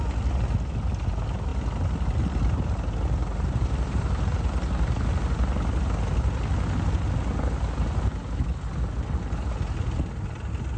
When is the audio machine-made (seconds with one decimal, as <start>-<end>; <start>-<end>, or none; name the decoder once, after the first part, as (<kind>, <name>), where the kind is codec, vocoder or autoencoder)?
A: none